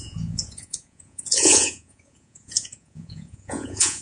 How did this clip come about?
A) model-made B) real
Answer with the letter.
A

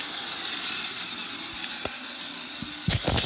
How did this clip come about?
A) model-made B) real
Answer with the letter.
B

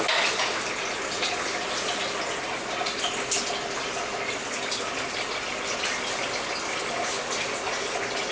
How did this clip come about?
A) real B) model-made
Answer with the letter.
A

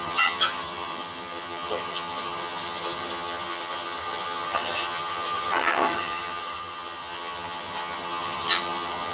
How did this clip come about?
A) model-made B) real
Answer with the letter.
A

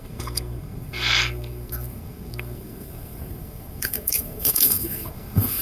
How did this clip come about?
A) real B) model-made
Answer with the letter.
B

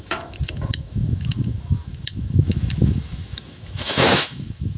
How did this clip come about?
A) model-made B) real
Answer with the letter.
A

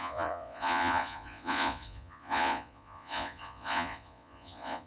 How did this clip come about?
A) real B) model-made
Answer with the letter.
B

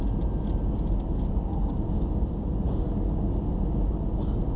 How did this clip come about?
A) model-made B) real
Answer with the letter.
B